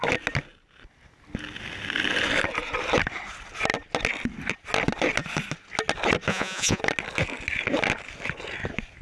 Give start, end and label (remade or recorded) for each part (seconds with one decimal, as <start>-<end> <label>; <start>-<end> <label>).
0.0-6.3 recorded; 6.3-6.8 remade; 6.8-9.0 recorded